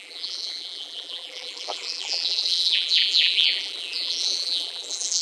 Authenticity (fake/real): fake